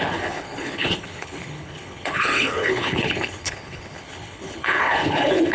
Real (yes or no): no